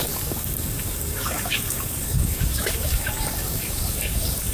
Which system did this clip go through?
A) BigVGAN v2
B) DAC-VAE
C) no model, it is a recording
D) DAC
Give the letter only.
D